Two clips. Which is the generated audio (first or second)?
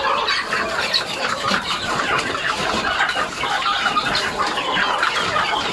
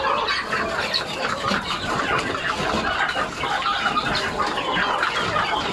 first